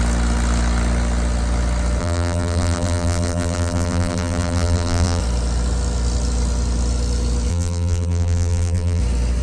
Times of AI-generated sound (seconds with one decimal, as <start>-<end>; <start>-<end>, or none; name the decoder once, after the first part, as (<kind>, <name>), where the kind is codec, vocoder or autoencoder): 2.0-5.2 (vocoder, BigVGAN v2); 7.5-9.0